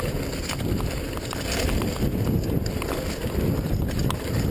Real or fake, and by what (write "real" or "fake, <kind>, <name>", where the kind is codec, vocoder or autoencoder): real